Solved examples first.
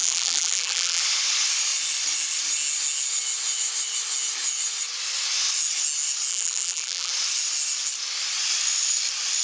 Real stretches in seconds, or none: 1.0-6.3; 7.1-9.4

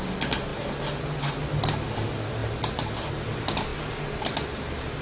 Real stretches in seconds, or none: 0.0-5.0

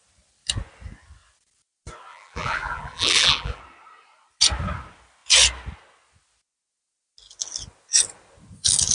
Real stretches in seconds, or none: 0.0-2.1; 3.6-8.9

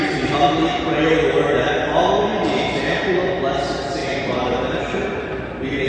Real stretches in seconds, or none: 0.0-4.0

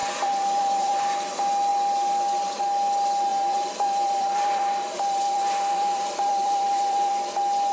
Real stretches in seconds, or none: 1.0-3.3; 7.1-7.7